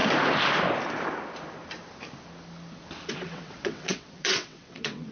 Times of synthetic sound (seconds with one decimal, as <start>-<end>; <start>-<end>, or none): 3.1-5.1